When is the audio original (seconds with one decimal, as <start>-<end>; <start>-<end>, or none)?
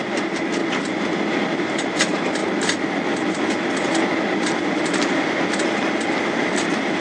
0.6-1.6; 2.4-6.6